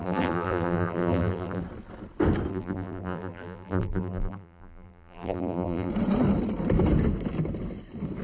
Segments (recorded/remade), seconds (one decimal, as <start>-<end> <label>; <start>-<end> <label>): 0.0-1.6 remade; 1.6-2.5 recorded; 2.5-5.9 remade; 5.9-8.2 recorded